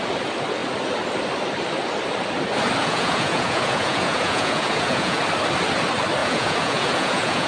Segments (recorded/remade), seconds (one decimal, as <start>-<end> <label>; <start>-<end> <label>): 0.0-2.8 recorded; 2.8-5.2 remade; 5.2-6.2 recorded; 6.2-7.5 remade